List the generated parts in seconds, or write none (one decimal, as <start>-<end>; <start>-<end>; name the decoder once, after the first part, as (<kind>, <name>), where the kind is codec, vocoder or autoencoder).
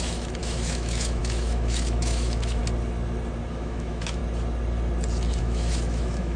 0.0-2.6 (autoencoder, DAC-VAE); 3.5-4.2; 5.4-6.4